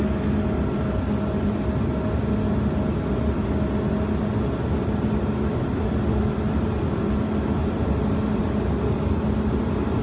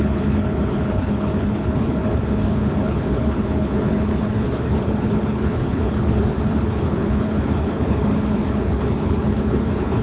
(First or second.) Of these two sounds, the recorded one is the first